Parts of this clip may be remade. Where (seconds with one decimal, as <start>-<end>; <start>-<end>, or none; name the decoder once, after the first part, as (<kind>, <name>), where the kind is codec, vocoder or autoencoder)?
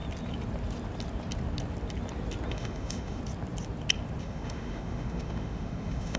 2.5-3.2 (autoencoder, DAC-VAE); 4.2-6.2